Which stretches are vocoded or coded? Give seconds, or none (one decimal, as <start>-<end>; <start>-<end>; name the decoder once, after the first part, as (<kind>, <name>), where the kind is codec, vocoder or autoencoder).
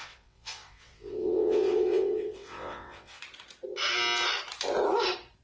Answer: 0.0-3.2 (vocoder, WaveNeXt)